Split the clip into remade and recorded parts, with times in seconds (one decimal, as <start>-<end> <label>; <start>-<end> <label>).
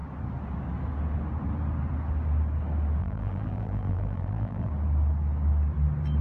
0.0-3.0 recorded; 3.0-4.7 remade; 4.7-6.2 recorded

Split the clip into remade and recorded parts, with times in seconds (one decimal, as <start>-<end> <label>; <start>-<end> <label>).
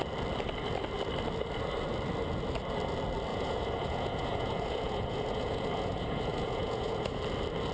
0.0-3.3 recorded; 3.3-7.2 remade; 7.2-7.7 recorded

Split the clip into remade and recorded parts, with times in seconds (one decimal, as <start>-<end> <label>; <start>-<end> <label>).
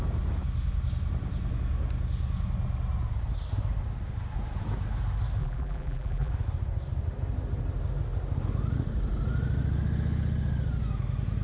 0.0-5.4 recorded; 5.4-6.3 remade; 6.3-11.4 recorded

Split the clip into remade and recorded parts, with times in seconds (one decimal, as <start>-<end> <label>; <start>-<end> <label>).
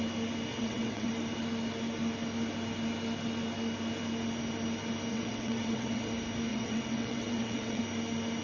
0.0-0.5 recorded; 0.5-1.1 remade; 1.1-5.1 recorded; 5.1-6.1 remade; 6.1-6.5 recorded; 6.5-7.8 remade; 7.8-8.4 recorded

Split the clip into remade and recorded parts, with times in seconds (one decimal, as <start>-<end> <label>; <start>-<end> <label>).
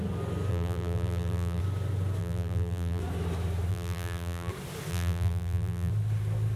0.0-0.5 recorded; 0.5-1.6 remade; 1.6-2.2 recorded; 2.2-3.0 remade; 3.0-3.7 recorded; 3.7-4.5 remade; 4.5-4.9 recorded; 4.9-5.9 remade; 5.9-6.6 recorded